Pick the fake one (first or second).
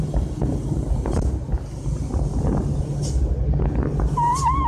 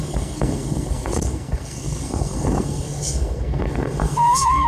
second